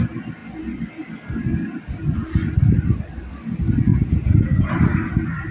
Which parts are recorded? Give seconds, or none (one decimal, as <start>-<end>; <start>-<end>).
0.0-3.9; 4.7-5.5